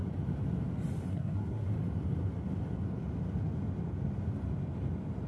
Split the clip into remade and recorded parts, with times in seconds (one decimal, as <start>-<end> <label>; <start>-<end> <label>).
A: 0.0-1.1 recorded; 1.1-1.7 remade; 1.7-5.3 recorded